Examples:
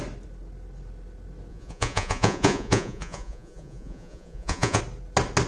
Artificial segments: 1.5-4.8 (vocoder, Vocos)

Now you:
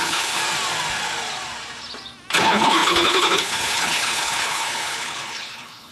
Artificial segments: 0.0-0.4 (codec, HILCodec); 2.4-5.9